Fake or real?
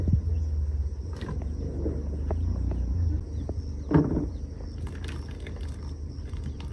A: real